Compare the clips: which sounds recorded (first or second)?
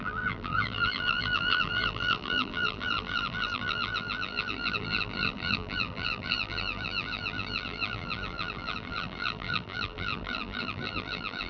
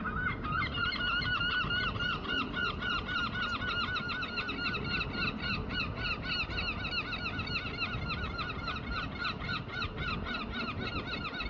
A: second